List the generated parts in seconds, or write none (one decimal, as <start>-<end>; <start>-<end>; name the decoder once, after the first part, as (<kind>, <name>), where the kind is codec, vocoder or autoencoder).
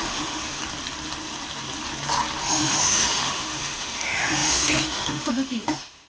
0.0-0.6 (autoencoder, DAC-VAE); 2.4-6.1